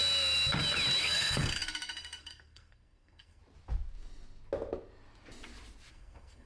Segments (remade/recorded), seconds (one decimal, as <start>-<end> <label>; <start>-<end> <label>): 0.0-1.0 recorded; 1.0-3.4 remade; 3.4-5.9 recorded; 5.9-6.5 remade